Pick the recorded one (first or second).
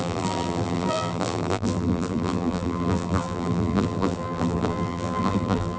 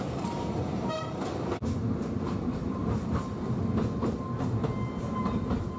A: second